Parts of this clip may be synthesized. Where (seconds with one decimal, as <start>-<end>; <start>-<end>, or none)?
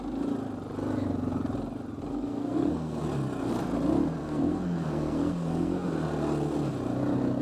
2.1-3.0; 4.2-5.9